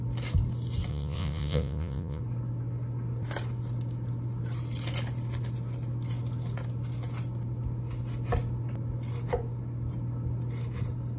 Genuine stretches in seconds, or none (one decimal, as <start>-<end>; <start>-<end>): 0.0-0.9; 2.2-11.2